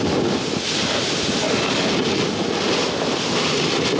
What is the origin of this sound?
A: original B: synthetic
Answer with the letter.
A